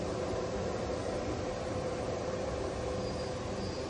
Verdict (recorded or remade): recorded